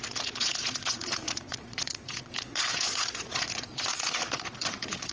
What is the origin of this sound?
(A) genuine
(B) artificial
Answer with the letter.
B